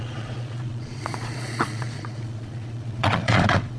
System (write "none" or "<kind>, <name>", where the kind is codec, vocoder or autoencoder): vocoder, Vocos